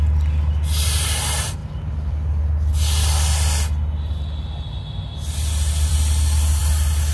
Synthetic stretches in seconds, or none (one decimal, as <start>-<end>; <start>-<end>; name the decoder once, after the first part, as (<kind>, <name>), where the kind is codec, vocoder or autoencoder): none